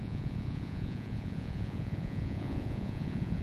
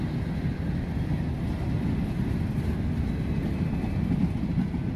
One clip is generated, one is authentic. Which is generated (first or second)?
first